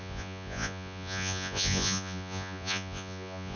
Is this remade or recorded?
remade